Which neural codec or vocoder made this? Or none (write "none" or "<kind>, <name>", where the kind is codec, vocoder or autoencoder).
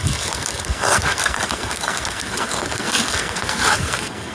codec, SNAC